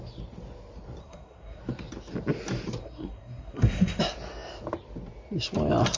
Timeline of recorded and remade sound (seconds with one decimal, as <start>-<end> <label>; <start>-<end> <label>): 0.0-1.0 recorded; 1.0-1.6 remade; 1.6-2.8 recorded; 2.8-4.0 remade; 4.0-6.0 recorded

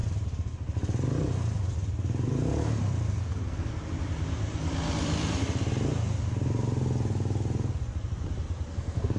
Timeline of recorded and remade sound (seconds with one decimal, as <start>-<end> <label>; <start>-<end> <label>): 0.0-3.1 recorded; 3.1-3.7 remade; 3.7-8.7 recorded; 8.7-9.2 remade

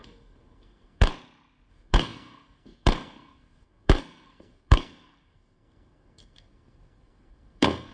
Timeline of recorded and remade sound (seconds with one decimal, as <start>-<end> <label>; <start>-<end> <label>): 0.0-1.1 remade; 1.1-1.7 recorded; 1.7-7.9 remade

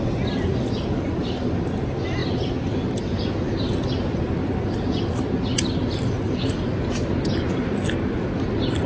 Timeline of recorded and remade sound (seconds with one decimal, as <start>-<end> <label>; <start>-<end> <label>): 0.0-8.9 recorded

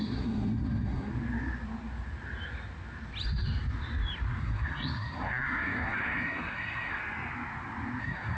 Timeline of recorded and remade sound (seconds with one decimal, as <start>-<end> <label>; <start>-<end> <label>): 0.0-1.1 remade; 1.1-4.4 recorded; 4.4-7.0 remade; 7.0-8.0 recorded; 8.0-8.4 remade

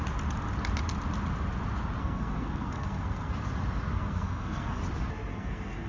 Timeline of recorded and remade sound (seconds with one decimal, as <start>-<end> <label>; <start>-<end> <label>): 0.0-2.0 recorded; 2.0-3.3 remade; 3.3-3.9 recorded; 3.9-4.8 remade; 4.8-5.3 recorded; 5.3-5.9 remade

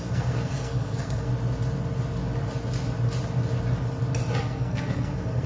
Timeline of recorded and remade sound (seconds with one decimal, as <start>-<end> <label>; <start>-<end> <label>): 0.0-1.3 remade; 1.3-4.4 recorded; 4.4-5.5 remade